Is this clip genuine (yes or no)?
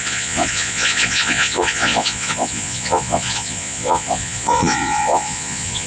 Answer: no